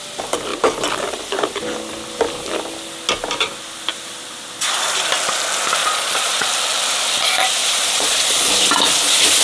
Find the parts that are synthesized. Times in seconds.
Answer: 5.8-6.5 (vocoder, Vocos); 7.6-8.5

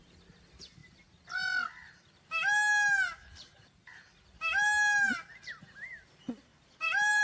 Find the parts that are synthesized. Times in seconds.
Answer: 6.5-7.2 (vocoder, BigVGAN v2)